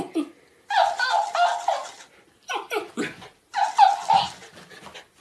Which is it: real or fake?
real